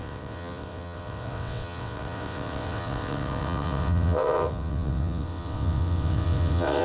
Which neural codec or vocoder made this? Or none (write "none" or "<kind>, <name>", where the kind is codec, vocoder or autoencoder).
vocoder, WaveNeXt